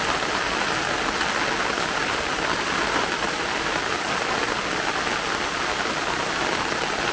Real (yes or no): yes